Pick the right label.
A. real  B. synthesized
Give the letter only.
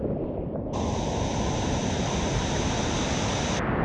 A